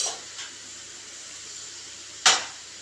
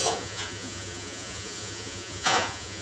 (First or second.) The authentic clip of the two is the first